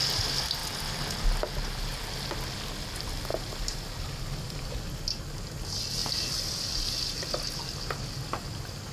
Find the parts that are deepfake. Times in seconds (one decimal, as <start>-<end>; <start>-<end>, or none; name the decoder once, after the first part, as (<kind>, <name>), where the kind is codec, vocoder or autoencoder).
3.3-4.9 (vocoder, BigVGAN v2)